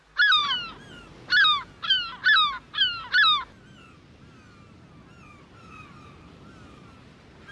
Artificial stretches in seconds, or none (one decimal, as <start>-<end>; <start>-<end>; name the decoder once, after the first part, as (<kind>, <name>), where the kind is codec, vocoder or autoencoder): none